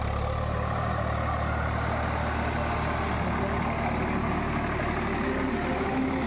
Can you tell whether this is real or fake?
real